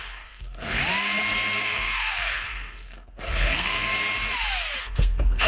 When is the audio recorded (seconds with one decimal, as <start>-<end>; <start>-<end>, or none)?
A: 0.8-1.6; 3.9-4.8